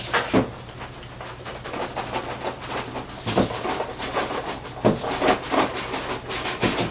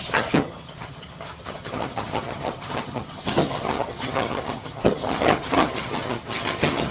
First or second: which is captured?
first